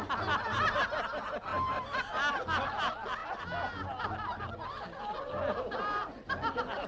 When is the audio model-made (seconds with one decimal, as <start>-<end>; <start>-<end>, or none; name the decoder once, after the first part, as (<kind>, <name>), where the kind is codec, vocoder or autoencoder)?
none